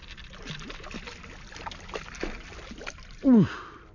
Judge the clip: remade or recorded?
recorded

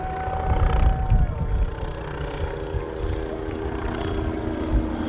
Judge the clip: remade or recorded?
recorded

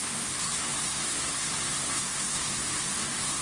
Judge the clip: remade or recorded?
remade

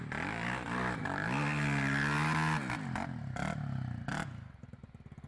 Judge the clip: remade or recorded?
recorded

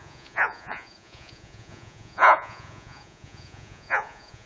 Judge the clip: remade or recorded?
remade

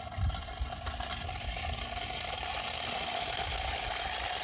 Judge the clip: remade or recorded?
recorded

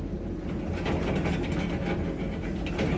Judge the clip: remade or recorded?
recorded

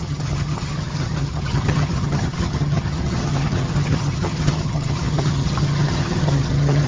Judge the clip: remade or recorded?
remade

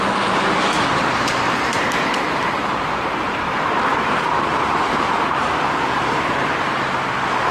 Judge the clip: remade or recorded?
remade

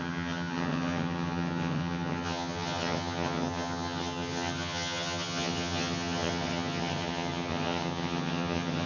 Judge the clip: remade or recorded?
remade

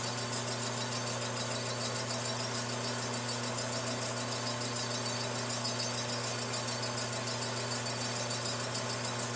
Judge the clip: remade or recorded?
recorded